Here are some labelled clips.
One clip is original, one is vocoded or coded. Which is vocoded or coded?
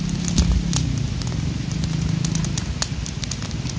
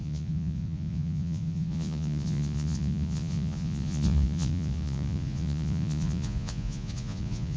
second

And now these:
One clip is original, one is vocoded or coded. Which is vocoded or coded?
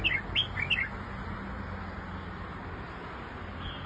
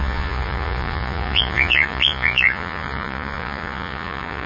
second